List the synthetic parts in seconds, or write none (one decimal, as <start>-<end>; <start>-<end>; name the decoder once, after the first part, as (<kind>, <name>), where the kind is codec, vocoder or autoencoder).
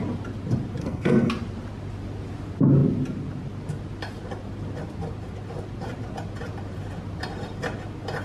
0.8-1.3 (codec, SNAC)